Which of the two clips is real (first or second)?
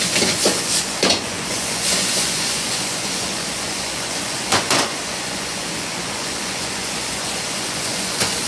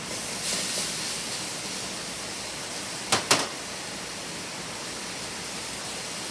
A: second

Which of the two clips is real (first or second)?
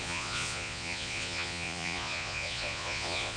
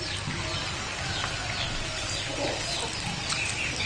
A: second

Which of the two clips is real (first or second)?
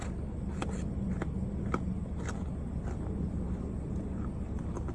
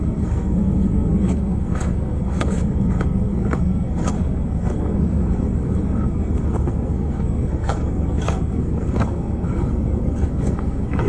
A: first